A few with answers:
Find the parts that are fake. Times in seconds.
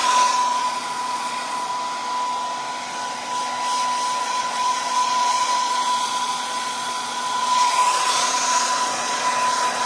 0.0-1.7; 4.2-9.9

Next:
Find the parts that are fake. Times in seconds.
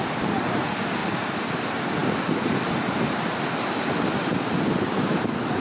none